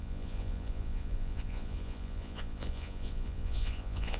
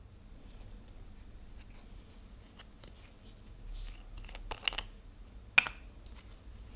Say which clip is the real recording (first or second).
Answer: second